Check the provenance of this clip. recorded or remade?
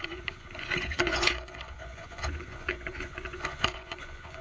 remade